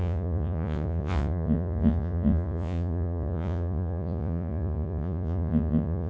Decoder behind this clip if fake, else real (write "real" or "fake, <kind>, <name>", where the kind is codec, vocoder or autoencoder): fake, vocoder, Vocos